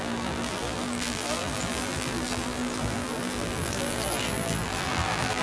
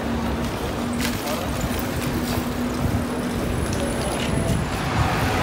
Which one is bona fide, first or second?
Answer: second